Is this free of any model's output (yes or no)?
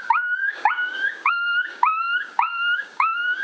no